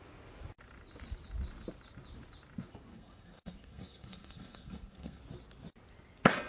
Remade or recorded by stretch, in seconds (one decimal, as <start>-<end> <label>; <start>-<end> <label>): 0.0-2.9 recorded; 2.9-5.2 remade; 5.2-6.5 recorded